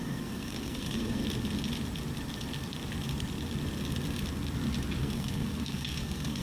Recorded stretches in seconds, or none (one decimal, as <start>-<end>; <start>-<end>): 1.2-5.0